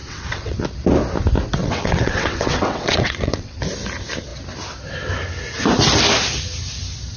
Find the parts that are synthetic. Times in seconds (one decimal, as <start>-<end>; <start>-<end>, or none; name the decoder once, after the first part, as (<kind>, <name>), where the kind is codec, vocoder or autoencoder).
0.0-0.6 (vocoder, WaveNeXt); 1.6-3.6